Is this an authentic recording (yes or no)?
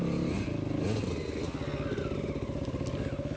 yes